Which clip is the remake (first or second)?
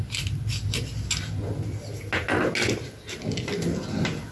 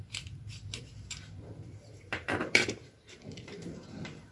second